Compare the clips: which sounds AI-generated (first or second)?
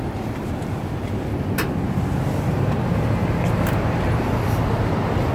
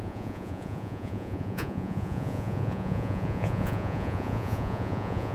second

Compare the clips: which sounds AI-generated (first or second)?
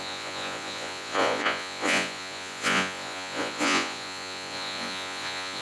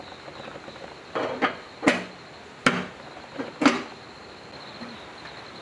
first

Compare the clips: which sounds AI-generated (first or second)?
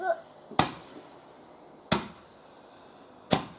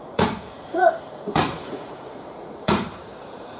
second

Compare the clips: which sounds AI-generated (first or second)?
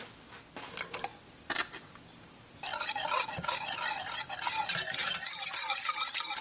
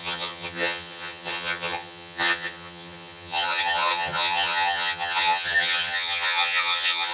second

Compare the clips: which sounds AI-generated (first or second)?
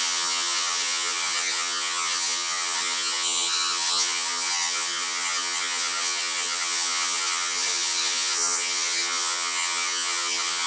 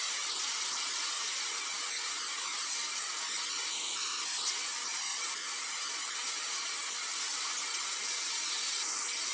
first